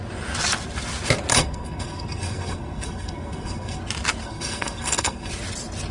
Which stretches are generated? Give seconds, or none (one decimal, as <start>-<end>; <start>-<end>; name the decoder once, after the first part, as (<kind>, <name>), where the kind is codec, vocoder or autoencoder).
1.3-3.8 (codec, SNAC); 4.2-5.3